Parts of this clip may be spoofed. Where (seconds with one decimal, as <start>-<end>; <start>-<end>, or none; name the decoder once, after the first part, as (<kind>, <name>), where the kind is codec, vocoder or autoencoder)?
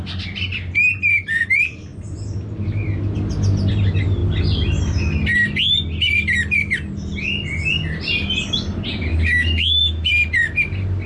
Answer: 9.1-10.1 (autoencoder, DAC-VAE)